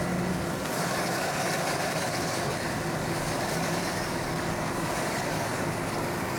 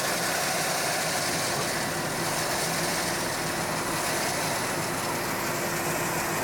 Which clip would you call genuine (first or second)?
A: second